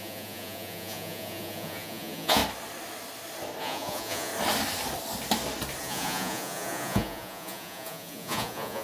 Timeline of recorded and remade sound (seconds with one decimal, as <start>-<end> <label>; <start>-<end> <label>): 0.0-2.4 remade; 2.4-3.6 recorded; 3.6-4.3 remade; 4.3-5.8 recorded; 5.8-8.8 remade